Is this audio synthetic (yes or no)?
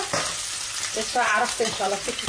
no